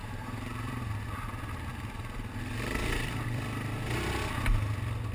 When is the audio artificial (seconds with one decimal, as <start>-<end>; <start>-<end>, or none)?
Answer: 0.0-0.9